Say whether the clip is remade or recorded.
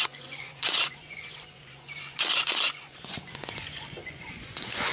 remade